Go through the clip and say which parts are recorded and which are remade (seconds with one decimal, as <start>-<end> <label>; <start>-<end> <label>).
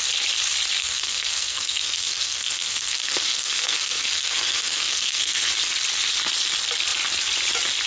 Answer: 0.0-0.8 recorded; 0.8-5.5 remade; 5.5-7.9 recorded